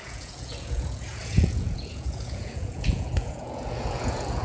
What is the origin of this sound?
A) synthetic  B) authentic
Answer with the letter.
A